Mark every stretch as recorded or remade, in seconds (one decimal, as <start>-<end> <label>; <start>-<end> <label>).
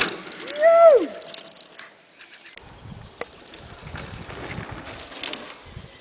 0.0-6.0 recorded